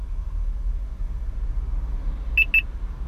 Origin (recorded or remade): recorded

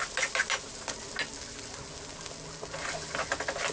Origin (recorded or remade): recorded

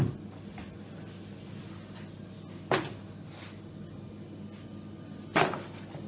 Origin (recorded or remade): recorded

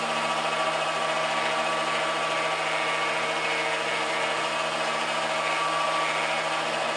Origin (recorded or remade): recorded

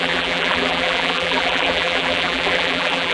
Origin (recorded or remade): remade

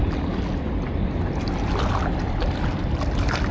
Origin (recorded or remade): recorded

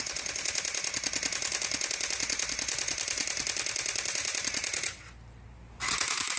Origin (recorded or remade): recorded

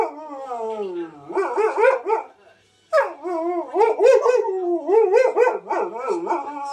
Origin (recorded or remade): recorded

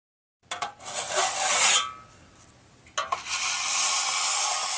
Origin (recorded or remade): recorded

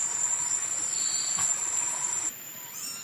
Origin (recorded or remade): recorded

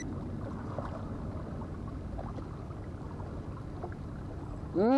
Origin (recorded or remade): recorded